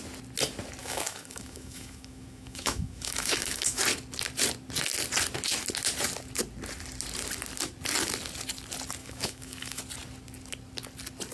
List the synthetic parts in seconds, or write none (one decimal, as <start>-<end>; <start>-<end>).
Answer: 0.8-3.8; 9.0-9.8

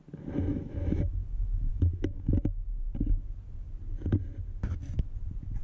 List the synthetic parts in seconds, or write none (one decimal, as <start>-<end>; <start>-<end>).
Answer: 0.5-1.0; 1.7-2.4

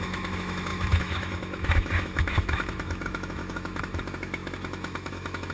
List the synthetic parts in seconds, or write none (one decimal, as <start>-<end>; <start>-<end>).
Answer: 0.0-5.5

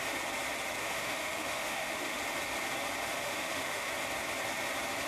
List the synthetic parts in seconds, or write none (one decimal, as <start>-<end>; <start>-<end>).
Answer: 0.8-2.2; 3.1-3.9